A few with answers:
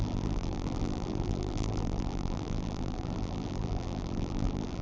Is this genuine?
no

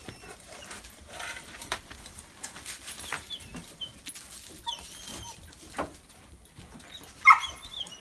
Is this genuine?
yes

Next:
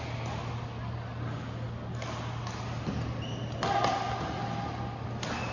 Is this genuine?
yes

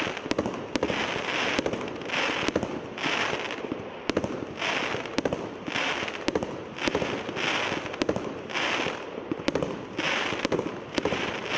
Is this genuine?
yes